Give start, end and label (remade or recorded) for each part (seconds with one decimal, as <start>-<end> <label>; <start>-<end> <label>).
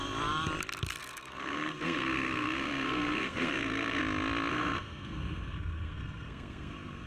0.0-1.0 recorded; 1.0-4.0 remade; 4.0-4.5 recorded; 4.5-7.1 remade